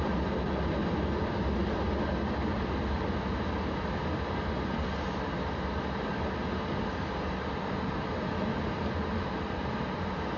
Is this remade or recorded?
recorded